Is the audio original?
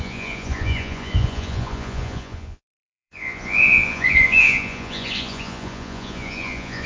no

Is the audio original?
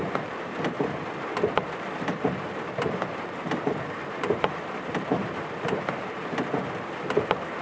no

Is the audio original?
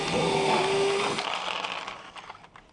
yes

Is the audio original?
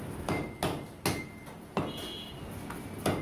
yes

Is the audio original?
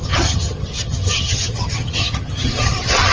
no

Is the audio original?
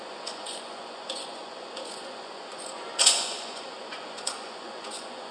no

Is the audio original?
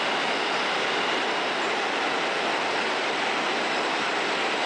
yes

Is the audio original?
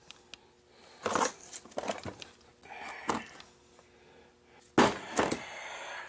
yes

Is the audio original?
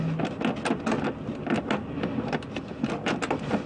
yes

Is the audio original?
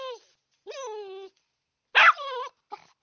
yes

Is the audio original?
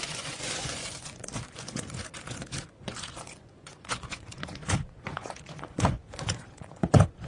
no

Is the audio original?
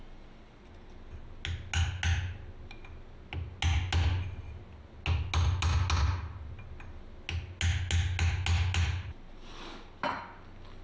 yes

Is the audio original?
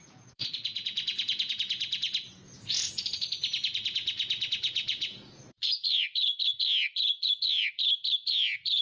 no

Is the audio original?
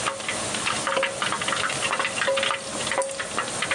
yes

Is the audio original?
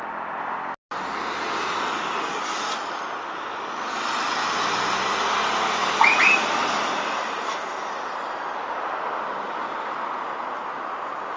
yes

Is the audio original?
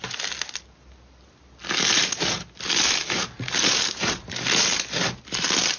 yes